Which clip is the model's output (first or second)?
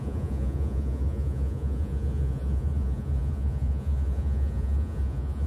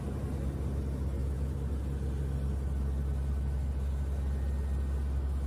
first